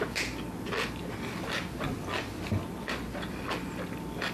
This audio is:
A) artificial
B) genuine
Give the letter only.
B